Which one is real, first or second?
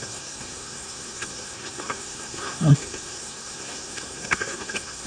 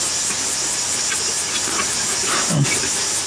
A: second